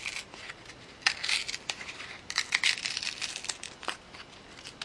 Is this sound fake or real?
fake